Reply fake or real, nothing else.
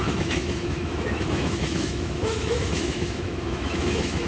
fake